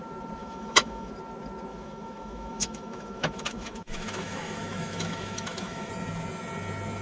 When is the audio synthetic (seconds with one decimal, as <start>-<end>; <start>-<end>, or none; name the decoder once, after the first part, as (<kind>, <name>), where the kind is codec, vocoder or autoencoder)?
0.4-1.1 (autoencoder, DAC-VAE); 1.7-5.9